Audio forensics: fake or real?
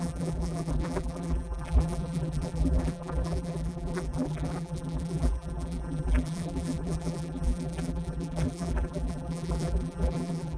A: fake